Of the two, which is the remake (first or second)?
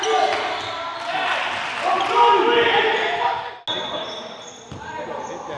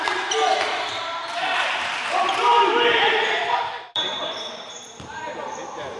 second